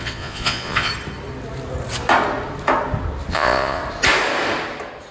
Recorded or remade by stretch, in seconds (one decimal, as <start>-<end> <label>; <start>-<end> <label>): 0.0-0.9 remade; 0.9-3.3 recorded; 3.3-3.8 remade; 3.8-5.1 recorded